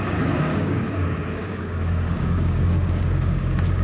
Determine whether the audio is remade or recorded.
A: remade